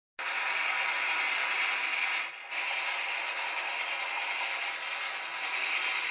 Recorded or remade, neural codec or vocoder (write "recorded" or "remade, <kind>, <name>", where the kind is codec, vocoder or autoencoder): recorded